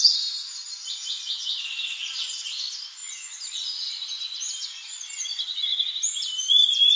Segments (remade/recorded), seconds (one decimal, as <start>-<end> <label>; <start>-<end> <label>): 0.0-3.0 remade; 3.0-5.3 recorded; 5.3-7.0 remade